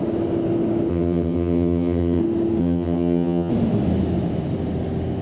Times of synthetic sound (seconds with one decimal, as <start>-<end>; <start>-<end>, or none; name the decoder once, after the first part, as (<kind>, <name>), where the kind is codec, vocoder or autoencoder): 0.9-2.2 (vocoder, HiFi-GAN); 2.6-3.5